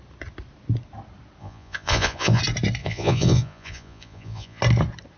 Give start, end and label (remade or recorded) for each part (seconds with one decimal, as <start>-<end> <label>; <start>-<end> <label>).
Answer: 0.0-1.4 recorded; 1.4-2.4 remade; 2.4-2.8 recorded; 2.8-4.6 remade; 4.6-5.2 recorded